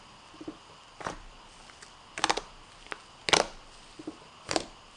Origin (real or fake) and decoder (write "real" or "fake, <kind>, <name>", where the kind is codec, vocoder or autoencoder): real